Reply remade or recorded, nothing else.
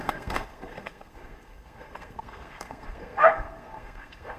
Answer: remade